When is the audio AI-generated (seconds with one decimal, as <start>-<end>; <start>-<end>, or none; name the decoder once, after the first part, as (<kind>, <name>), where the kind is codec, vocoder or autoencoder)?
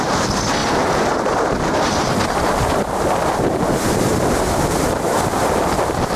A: 0.6-4.2 (vocoder, BigVGAN v2)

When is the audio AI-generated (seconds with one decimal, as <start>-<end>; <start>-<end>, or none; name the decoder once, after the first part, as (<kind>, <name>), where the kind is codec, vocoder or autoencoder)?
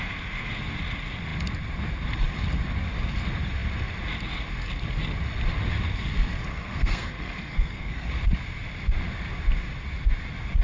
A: 6.5-8.1 (codec, SNAC)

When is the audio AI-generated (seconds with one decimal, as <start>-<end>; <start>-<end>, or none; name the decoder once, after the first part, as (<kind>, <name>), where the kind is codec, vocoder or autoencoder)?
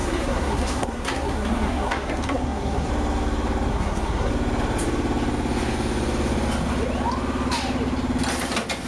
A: 0.0-2.9 (codec, SNAC); 3.7-4.3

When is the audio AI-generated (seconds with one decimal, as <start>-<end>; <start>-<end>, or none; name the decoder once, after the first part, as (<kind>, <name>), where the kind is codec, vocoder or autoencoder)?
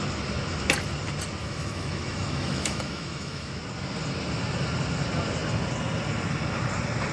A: 1.4-3.6 (autoencoder, DAC-VAE)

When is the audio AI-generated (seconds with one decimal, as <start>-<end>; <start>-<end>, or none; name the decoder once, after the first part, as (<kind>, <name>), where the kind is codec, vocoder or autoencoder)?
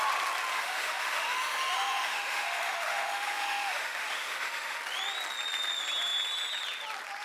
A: 0.5-4.8 (autoencoder, DAC-VAE)